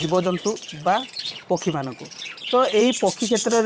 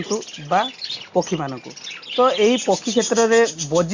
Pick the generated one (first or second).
first